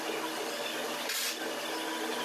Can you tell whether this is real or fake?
real